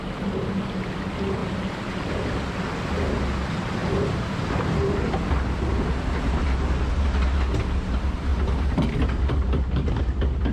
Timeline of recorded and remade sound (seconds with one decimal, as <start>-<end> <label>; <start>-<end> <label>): 0.0-1.4 recorded; 1.4-2.1 remade; 2.1-8.3 recorded; 8.3-10.0 remade; 10.0-10.5 recorded